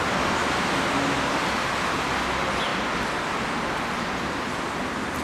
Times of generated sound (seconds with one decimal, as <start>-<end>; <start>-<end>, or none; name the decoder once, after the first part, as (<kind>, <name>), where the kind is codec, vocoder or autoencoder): none